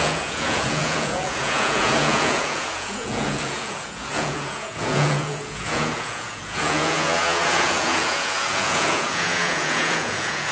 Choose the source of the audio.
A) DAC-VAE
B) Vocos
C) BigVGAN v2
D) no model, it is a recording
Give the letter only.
B